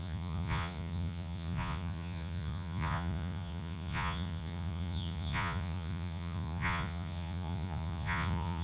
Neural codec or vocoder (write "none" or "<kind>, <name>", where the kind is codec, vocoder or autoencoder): vocoder, Vocos